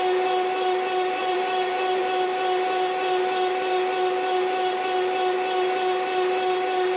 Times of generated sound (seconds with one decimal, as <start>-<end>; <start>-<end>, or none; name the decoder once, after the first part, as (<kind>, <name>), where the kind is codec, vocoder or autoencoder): 1.2-2.0 (vocoder, BigVGAN v2)